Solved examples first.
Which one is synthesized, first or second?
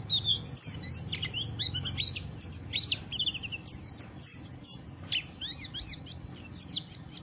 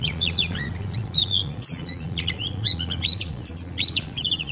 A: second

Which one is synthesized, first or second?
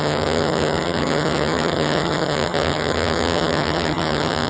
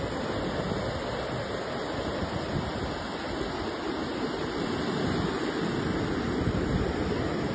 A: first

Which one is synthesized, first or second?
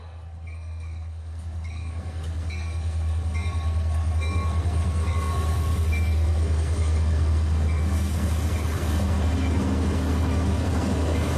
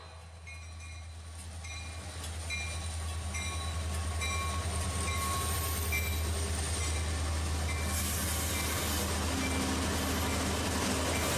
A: first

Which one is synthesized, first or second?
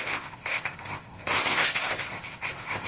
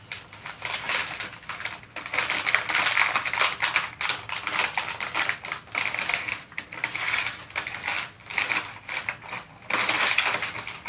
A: first